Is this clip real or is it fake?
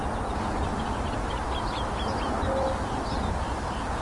fake